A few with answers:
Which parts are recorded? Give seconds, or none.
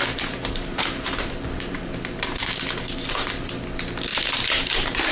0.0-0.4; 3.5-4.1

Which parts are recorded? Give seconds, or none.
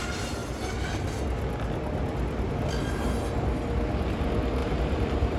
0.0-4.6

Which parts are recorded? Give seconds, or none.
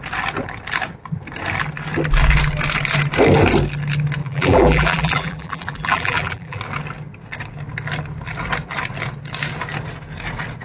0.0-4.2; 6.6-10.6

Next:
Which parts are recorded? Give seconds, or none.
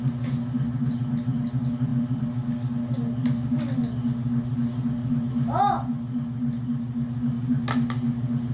0.0-8.5